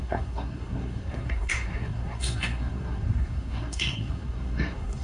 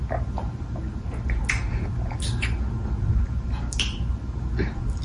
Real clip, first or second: second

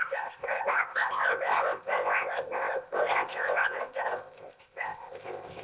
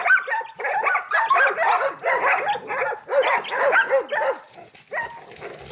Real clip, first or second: second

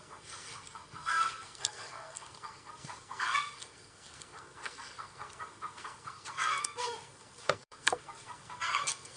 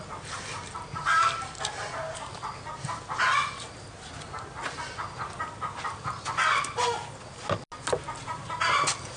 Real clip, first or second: second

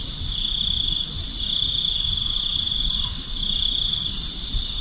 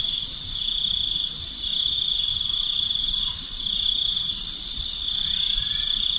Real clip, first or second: first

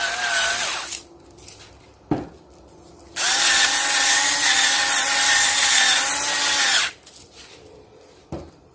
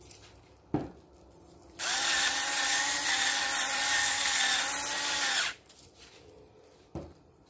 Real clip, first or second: first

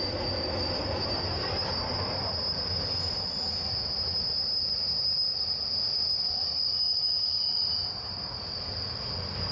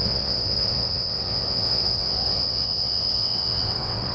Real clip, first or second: first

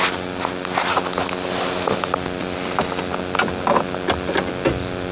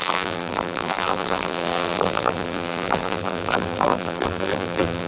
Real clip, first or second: first